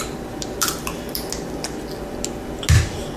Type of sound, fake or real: real